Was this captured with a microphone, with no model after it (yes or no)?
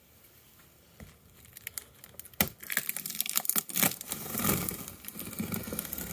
yes